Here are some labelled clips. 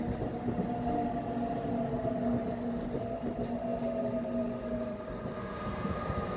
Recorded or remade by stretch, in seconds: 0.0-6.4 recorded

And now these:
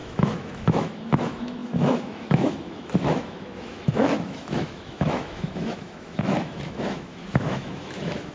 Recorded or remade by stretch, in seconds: 0.0-8.3 remade

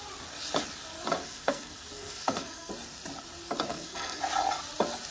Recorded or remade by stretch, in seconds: 0.0-1.2 recorded; 1.2-2.7 remade; 2.7-3.7 recorded; 3.7-4.2 remade; 4.2-5.1 recorded

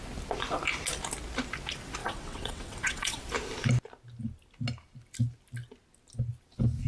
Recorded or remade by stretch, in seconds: 0.0-2.0 recorded; 2.0-3.2 remade; 3.2-6.9 recorded

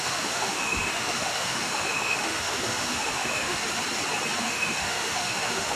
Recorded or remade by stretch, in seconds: 0.0-3.6 remade; 3.6-4.4 recorded; 4.4-5.8 remade